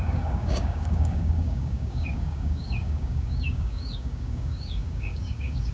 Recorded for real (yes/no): no